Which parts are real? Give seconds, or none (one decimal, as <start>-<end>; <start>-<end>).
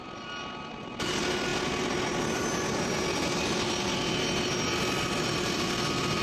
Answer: 0.0-6.2